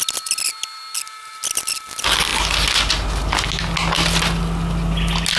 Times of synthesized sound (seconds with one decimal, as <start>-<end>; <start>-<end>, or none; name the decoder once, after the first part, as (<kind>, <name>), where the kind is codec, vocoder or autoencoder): none